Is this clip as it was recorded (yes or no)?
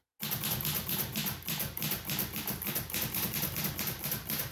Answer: yes